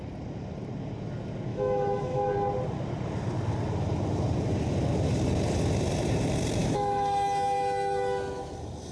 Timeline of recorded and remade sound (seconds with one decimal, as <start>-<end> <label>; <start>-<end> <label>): 0.0-1.5 recorded; 1.5-2.3 remade; 2.3-6.6 recorded; 6.6-8.5 remade; 8.5-8.9 recorded